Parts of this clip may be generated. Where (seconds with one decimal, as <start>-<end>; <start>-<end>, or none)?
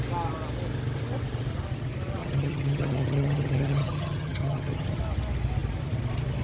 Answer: 2.2-5.0